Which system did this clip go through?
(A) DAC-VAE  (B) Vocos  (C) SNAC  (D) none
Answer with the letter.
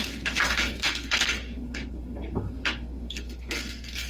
C